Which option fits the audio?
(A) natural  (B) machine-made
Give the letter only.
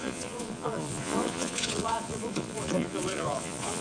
B